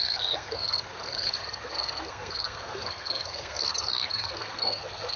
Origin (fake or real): fake